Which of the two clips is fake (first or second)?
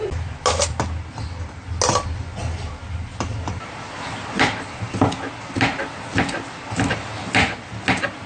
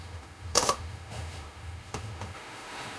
second